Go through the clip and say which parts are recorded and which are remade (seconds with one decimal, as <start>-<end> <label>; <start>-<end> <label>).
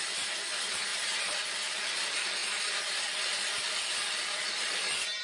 0.0-0.9 recorded; 0.9-1.4 remade; 1.4-5.2 recorded